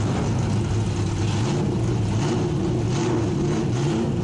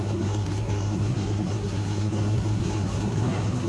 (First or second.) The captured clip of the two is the first